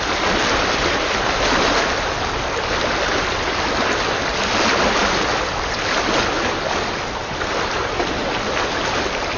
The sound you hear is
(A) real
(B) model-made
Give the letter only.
A